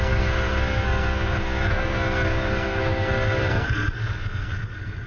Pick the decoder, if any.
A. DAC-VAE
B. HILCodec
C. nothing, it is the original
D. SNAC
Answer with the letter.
D